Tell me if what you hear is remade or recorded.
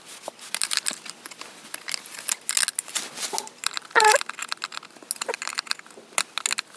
recorded